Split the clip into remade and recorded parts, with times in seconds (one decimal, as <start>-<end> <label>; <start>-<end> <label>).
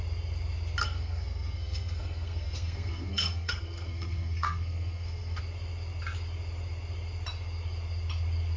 0.0-0.8 recorded; 0.8-5.4 remade; 5.4-8.6 recorded